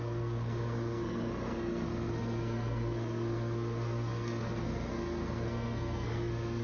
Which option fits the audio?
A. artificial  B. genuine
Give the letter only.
A